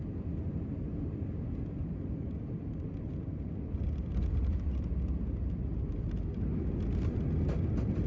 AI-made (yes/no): no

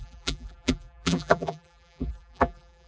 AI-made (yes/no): yes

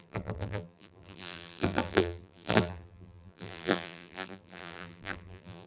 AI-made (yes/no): yes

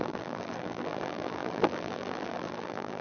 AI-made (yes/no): yes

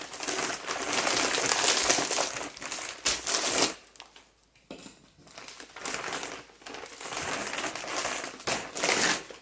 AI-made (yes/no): no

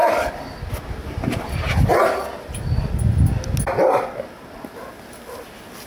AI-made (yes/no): no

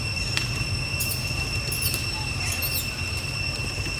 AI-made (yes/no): no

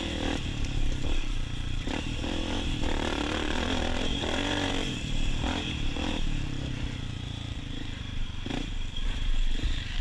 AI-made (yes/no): yes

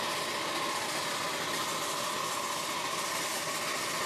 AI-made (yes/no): no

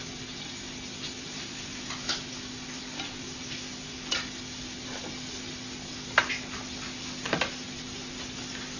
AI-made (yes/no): no